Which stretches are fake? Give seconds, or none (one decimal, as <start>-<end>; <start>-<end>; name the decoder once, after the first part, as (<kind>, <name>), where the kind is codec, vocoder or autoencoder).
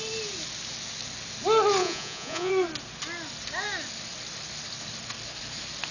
1.8-2.5 (vocoder, Vocos)